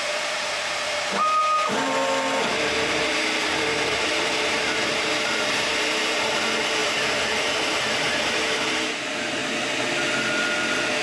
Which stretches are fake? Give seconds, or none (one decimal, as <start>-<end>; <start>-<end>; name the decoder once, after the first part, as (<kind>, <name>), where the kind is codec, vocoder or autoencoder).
0.0-9.4 (vocoder, BigVGAN v2)